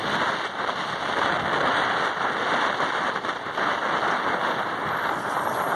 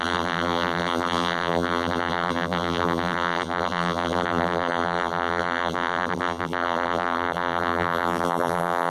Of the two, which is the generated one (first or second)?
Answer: second